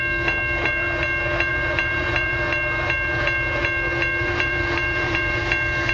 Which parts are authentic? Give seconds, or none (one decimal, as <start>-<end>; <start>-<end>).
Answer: 0.0-1.5; 2.4-4.2; 5.4-5.9